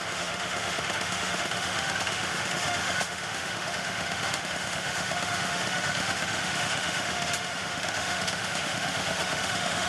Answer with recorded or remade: remade